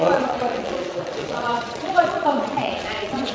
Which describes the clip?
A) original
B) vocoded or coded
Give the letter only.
B